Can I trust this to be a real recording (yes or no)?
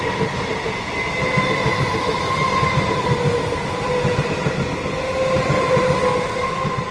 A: yes